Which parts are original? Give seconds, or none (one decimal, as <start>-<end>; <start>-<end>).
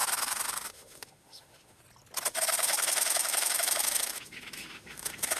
1.8-2.3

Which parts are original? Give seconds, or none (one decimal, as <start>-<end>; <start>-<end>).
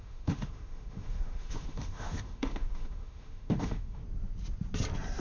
4.0-5.2